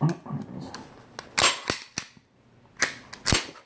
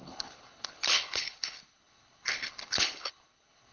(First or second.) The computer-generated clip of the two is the second